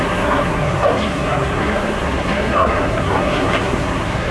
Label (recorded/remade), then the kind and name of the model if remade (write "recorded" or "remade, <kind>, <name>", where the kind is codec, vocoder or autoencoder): remade, codec, SNAC